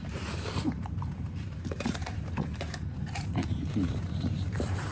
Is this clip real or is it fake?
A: fake